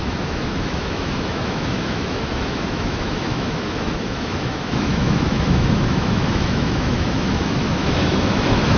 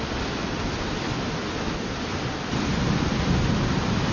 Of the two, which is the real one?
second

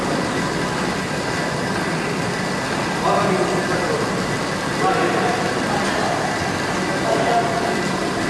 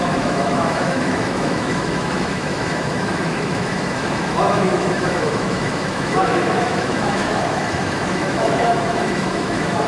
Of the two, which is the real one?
first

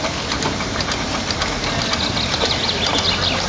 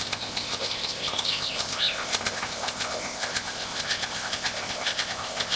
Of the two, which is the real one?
first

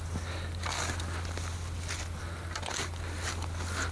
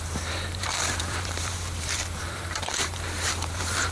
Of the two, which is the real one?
first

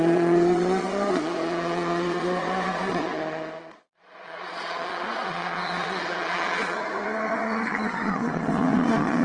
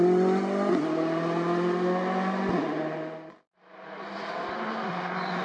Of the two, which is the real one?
second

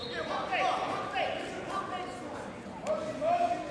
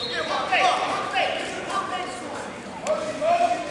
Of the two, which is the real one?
first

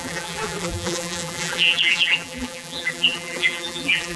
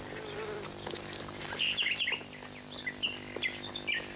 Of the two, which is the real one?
second